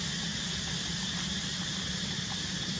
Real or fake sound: real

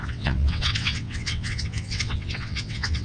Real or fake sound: fake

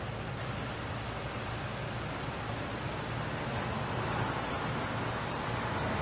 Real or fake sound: real